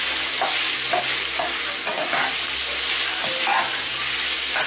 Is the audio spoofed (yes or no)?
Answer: no